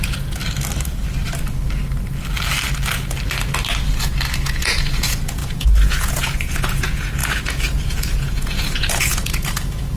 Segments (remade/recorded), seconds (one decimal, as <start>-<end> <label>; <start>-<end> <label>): 0.0-0.4 remade; 0.4-4.4 recorded; 4.4-10.0 remade